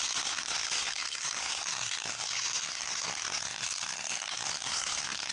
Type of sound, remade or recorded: remade